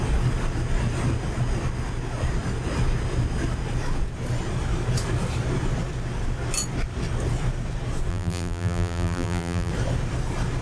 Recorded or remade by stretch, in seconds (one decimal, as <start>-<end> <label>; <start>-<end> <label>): 0.0-8.1 recorded; 8.1-9.7 remade; 9.7-10.6 recorded